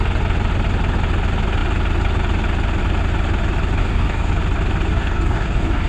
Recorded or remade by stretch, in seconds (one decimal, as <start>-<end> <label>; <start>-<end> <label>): 0.0-3.8 recorded; 3.8-4.3 remade; 4.3-4.9 recorded; 4.9-5.9 remade